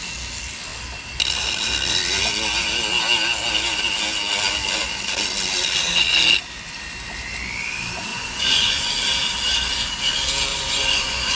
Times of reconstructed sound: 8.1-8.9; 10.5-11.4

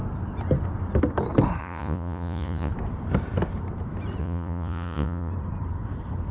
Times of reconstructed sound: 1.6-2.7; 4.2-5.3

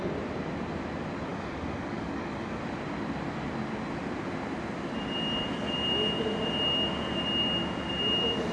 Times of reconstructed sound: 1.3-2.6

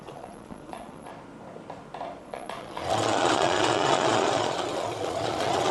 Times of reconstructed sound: 0.0-1.1; 2.2-5.7

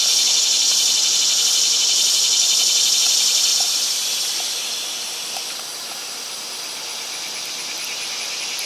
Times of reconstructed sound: 3.5-6.6

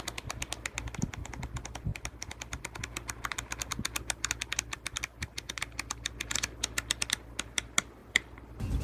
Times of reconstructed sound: 0.0-8.8

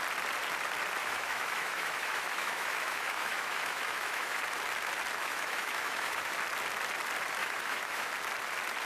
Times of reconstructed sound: 1.0-4.4; 5.2-6.3; 7.4-8.1

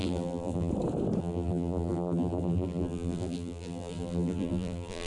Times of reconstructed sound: 0.0-0.7; 1.2-5.1